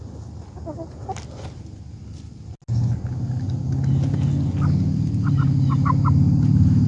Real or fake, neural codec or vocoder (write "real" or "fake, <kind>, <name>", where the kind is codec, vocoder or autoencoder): real